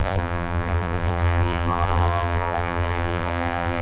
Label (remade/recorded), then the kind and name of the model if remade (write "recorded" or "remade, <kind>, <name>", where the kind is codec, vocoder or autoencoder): remade, vocoder, BigVGAN v2